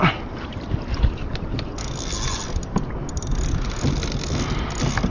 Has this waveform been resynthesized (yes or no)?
no